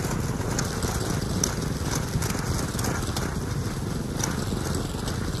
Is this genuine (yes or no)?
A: yes